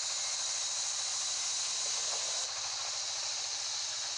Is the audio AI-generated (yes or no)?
no